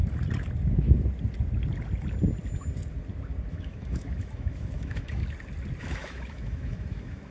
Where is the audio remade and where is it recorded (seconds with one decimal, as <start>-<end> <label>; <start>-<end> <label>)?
0.0-3.5 recorded; 3.5-5.2 remade; 5.2-5.8 recorded; 5.8-7.3 remade